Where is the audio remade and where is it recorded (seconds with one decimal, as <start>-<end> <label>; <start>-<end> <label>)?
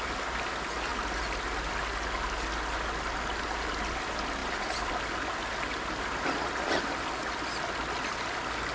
0.0-8.7 recorded